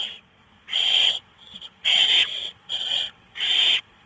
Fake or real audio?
fake